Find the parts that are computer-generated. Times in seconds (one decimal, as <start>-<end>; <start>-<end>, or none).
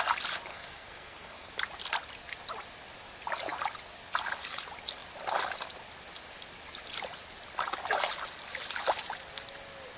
0.5-1.5